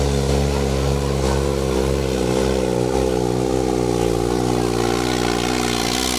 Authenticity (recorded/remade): recorded